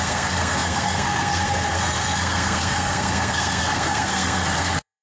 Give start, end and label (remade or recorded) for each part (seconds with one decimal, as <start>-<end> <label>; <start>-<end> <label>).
0.0-5.0 remade